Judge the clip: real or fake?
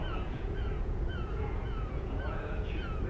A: fake